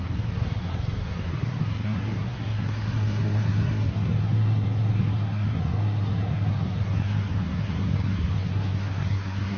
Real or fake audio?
fake